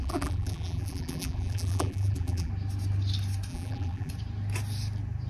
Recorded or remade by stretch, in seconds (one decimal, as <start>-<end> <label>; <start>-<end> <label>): 0.0-2.5 remade; 2.5-3.5 recorded; 3.5-4.1 remade; 4.1-5.3 recorded